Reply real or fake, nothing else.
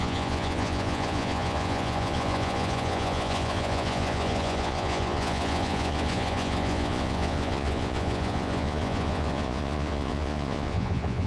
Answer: fake